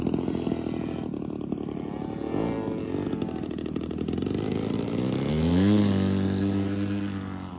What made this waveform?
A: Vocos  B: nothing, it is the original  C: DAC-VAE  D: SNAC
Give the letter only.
B